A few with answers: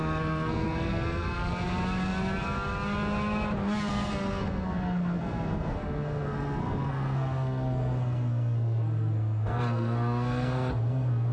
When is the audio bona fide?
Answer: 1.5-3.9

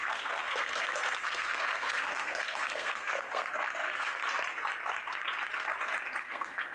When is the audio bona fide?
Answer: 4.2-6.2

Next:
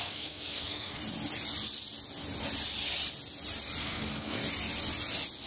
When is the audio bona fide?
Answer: 1.0-3.8; 4.4-5.5

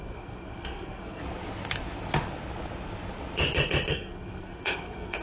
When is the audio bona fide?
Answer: 1.2-3.9

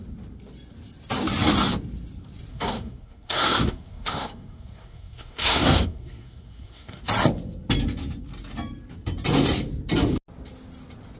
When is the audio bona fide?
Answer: 0.0-2.5; 7.0-11.2

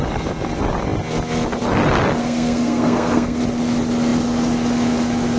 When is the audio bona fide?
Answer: 0.0-2.2; 3.4-5.4

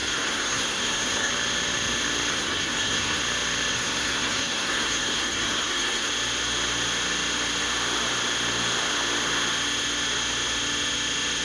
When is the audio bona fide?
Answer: 1.3-2.3; 3.2-3.7; 6.1-11.4

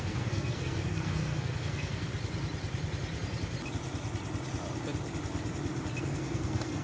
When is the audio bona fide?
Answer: 2.1-6.0